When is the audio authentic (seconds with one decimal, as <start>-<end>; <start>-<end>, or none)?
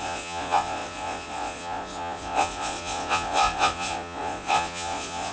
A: none